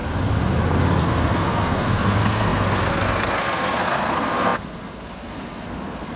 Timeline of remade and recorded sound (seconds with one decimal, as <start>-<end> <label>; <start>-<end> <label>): 0.0-1.0 recorded; 1.0-6.2 remade